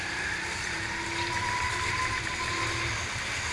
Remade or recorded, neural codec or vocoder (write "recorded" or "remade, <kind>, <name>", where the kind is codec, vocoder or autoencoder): recorded